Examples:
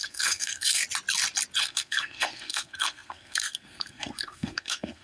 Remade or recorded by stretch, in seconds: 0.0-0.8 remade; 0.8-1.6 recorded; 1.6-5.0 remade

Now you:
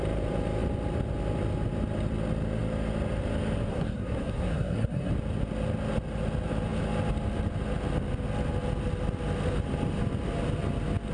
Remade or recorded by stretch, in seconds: 0.0-3.7 recorded; 3.7-5.1 remade; 5.1-11.1 recorded

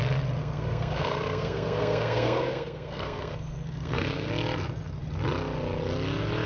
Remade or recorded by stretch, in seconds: 0.0-0.4 recorded; 0.4-4.3 remade; 4.3-6.5 recorded

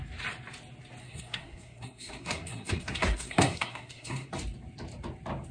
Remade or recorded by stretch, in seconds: 0.0-1.0 recorded; 1.0-4.3 remade; 4.3-5.5 recorded

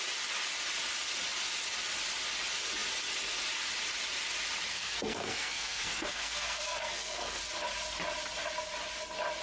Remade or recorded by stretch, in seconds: 0.0-4.7 recorded; 4.7-7.4 remade; 7.4-9.4 recorded